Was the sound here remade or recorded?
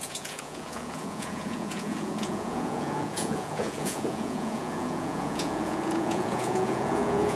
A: remade